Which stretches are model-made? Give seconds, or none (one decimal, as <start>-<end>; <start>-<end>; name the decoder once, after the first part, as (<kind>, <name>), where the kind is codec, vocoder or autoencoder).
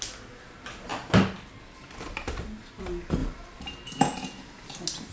none